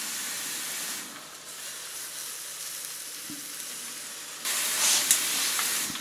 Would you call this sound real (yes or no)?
yes